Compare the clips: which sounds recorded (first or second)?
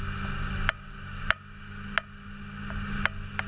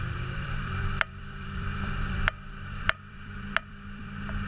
first